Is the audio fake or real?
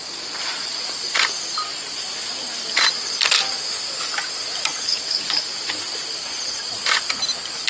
real